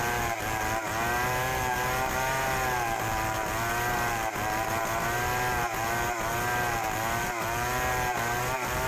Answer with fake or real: real